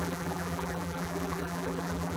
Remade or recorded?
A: remade